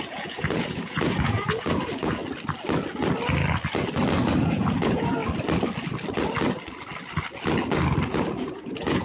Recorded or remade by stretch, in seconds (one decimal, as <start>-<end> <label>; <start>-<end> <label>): 0.0-2.2 remade; 2.2-4.4 recorded; 4.4-5.2 remade; 5.2-8.2 recorded; 8.2-9.0 remade